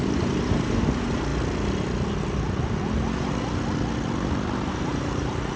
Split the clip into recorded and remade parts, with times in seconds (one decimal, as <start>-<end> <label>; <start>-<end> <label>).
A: 0.0-1.3 remade; 1.3-4.7 recorded; 4.7-5.6 remade